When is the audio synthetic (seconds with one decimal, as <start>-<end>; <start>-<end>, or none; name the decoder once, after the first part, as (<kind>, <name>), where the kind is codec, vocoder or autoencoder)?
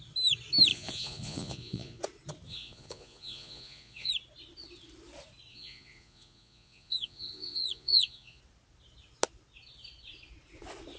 0.7-2.0 (vocoder, Vocos); 2.5-4.1; 5.5-8.4